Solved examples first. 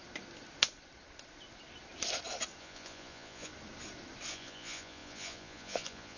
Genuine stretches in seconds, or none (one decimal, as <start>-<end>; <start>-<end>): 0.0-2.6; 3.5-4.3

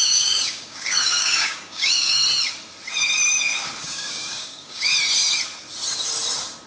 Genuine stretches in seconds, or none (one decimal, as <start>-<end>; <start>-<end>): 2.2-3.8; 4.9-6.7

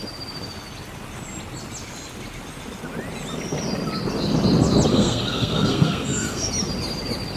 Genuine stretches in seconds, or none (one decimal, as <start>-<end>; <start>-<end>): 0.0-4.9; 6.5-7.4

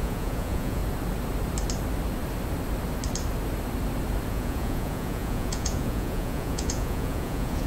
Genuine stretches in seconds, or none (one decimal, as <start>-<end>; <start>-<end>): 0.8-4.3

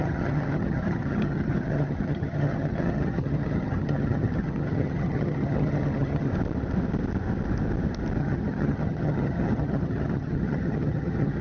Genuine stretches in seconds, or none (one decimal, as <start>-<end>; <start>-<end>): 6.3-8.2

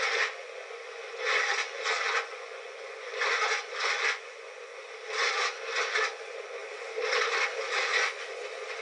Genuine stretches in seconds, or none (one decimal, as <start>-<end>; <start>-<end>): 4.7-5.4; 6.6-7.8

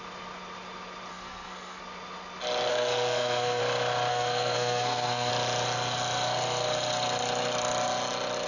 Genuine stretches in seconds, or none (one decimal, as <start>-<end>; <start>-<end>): 0.0-1.1; 1.8-2.7; 3.6-4.1; 5.3-8.5